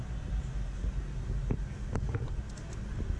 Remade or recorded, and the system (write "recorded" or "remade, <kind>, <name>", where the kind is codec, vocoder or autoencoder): recorded